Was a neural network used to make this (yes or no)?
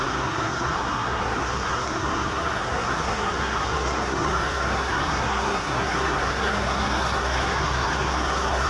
yes